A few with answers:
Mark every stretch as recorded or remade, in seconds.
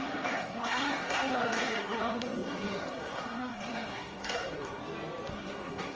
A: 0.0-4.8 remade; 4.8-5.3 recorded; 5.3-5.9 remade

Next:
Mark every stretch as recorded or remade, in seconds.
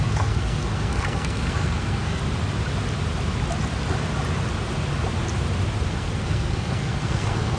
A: 0.0-2.2 remade; 2.2-5.9 recorded; 5.9-7.6 remade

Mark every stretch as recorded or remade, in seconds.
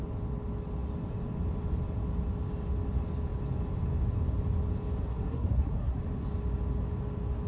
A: 0.0-5.0 recorded; 5.0-6.0 remade; 6.0-7.5 recorded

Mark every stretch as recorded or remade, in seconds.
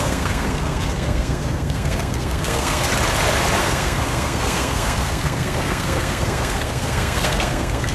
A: 0.0-2.9 remade; 2.9-3.6 recorded; 3.6-7.9 remade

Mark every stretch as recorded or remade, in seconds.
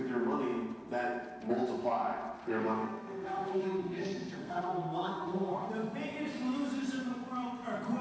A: 0.0-2.4 recorded; 2.4-5.7 remade; 5.7-8.0 recorded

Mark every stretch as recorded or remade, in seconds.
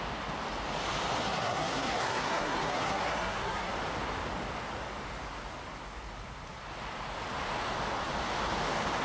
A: 0.0-1.2 recorded; 1.2-3.7 remade; 3.7-9.0 recorded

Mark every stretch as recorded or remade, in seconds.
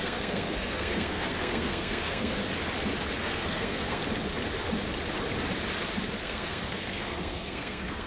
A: 0.0-2.4 remade; 2.4-3.2 recorded; 3.2-4.0 remade; 4.0-6.2 recorded; 6.2-8.1 remade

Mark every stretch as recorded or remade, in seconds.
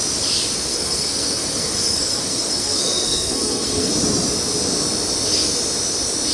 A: 0.0-0.7 recorded; 0.7-3.9 remade; 3.9-6.3 recorded